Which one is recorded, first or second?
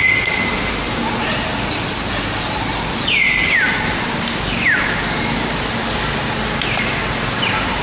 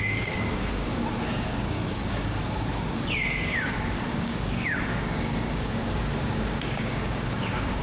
first